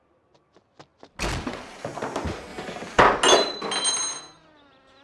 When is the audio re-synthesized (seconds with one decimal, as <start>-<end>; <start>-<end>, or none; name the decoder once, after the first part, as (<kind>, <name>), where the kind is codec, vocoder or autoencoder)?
2.5-3.0 (vocoder, BigVGAN v2)